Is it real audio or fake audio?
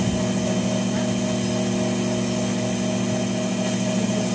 real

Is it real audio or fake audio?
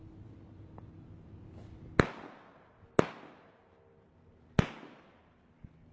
real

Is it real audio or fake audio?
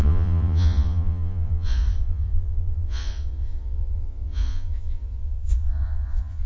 fake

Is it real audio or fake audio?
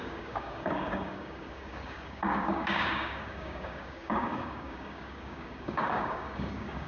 fake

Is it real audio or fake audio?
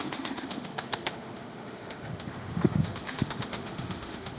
fake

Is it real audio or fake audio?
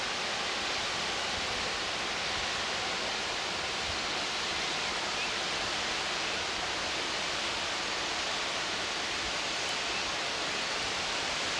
real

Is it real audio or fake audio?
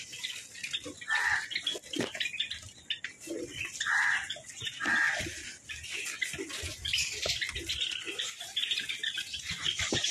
real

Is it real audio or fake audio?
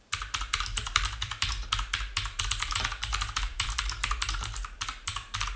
fake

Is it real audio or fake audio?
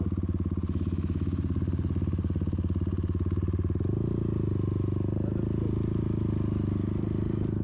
real